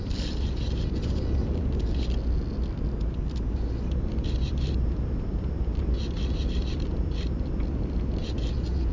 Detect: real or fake real